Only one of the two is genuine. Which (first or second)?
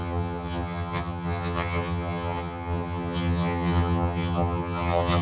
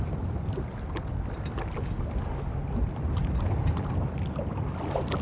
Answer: second